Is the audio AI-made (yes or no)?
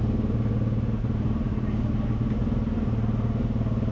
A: no